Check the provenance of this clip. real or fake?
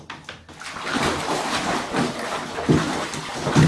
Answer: real